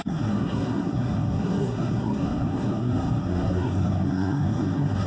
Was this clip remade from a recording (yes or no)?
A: yes